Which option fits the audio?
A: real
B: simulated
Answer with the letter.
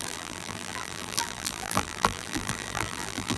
B